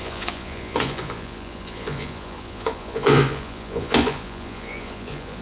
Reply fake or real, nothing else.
fake